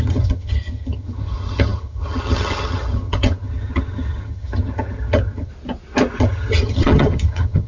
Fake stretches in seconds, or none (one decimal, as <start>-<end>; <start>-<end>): 0.0-5.5; 6.2-7.7